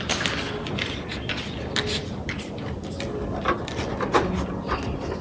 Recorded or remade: recorded